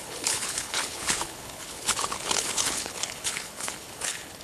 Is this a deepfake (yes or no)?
yes